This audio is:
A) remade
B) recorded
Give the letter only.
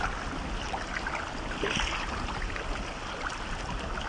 B